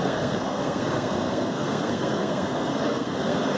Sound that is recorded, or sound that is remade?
remade